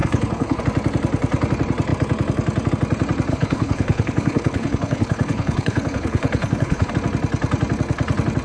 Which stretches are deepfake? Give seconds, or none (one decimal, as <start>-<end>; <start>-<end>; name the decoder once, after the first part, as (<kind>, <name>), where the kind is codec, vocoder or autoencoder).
0.0-0.6 (codec, HILCodec); 3.3-6.9